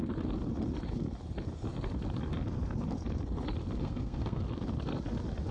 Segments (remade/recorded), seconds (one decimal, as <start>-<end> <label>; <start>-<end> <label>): 0.0-3.8 recorded; 3.8-4.4 remade; 4.4-5.5 recorded